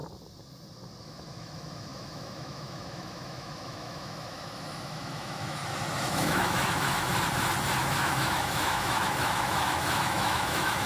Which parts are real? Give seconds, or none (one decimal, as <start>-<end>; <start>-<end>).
0.0-1.0; 5.6-6.1; 7.1-7.8